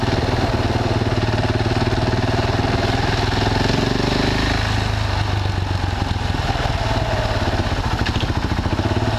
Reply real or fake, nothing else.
real